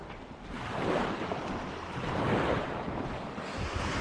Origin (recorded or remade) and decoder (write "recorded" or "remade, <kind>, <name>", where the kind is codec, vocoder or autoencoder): recorded